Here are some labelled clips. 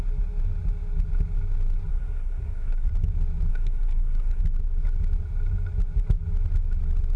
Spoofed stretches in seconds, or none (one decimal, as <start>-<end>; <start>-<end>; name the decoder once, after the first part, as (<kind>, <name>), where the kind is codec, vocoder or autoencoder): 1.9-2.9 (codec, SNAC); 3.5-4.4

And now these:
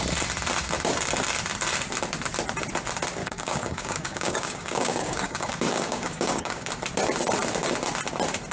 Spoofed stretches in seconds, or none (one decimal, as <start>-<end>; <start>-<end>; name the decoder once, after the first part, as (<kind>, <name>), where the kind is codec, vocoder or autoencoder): 3.2-6.7 (codec, DAC)

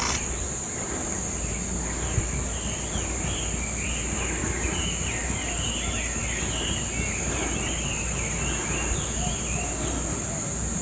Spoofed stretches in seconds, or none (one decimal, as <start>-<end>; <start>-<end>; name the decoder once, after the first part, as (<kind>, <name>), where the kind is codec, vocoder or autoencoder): none